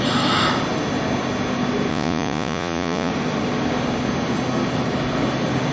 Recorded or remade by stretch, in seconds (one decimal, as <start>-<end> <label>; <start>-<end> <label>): 0.0-1.9 recorded; 1.9-3.1 remade; 3.1-5.7 recorded

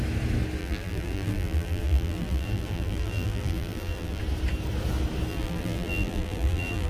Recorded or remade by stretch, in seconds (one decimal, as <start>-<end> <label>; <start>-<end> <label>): 0.0-0.6 recorded; 0.6-4.2 remade; 4.2-5.3 recorded; 5.3-6.9 remade

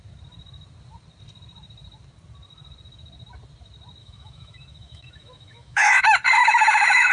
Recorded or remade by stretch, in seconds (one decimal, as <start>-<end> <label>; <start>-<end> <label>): 0.0-4.0 recorded; 4.0-6.0 remade; 6.0-6.4 recorded; 6.4-7.1 remade

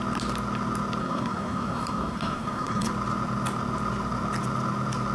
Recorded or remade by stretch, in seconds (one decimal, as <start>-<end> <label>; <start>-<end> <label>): 0.0-1.0 recorded; 1.0-2.9 remade; 2.9-5.1 recorded

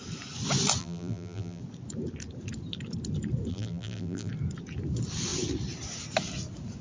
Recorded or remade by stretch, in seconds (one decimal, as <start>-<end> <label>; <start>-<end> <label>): 0.0-0.8 recorded; 0.8-1.6 remade; 1.6-3.5 recorded; 3.5-4.3 remade; 4.3-6.8 recorded

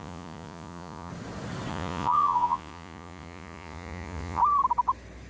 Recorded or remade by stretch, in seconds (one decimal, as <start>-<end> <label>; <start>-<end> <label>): 0.0-1.1 remade; 1.1-1.7 recorded; 1.7-4.4 remade; 4.4-5.3 recorded

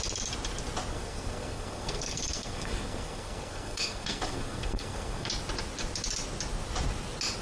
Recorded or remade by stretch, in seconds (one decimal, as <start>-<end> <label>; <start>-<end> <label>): 0.0-0.9 recorded; 0.9-5.3 remade; 5.3-7.4 recorded